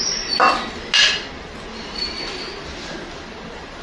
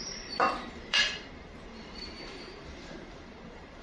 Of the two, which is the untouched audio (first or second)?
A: first